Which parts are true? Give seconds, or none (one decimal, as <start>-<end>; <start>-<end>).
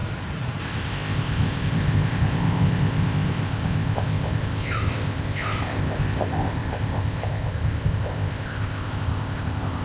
0.0-0.6